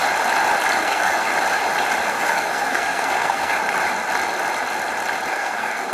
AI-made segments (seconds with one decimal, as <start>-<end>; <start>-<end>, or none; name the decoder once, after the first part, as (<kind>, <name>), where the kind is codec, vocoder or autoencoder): 0.8-1.3 (codec, SNAC); 2.1-3.5; 5.3-5.9